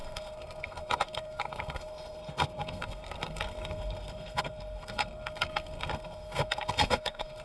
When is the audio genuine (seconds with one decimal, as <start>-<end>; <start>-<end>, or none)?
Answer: none